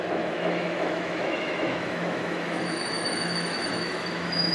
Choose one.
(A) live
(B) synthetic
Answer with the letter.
B